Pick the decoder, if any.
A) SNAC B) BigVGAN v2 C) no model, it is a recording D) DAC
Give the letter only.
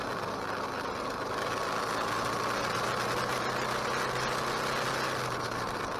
C